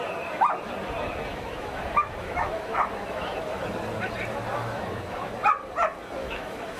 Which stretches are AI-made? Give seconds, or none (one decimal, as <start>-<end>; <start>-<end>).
1.3-3.6; 4.6-5.3; 6.2-6.8